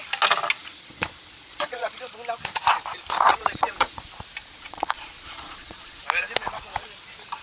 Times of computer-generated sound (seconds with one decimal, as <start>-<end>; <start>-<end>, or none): 0.6-2.0; 3.3-4.1; 4.5-6.0